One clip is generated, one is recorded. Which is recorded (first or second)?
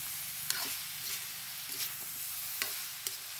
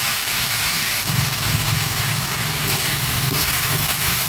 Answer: first